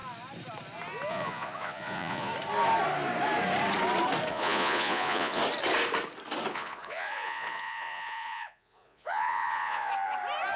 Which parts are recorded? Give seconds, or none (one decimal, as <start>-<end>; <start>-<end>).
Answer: 0.0-1.1; 2.3-4.3; 5.4-6.5; 9.9-10.6